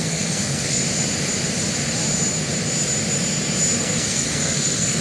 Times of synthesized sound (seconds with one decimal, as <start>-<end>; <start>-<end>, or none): 0.0-0.8; 3.8-5.0